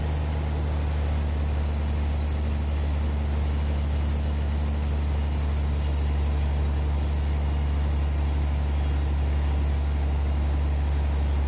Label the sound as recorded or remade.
recorded